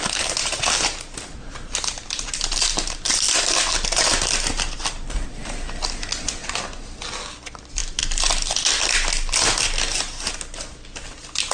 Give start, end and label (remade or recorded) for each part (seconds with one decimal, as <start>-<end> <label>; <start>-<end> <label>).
0.0-11.5 recorded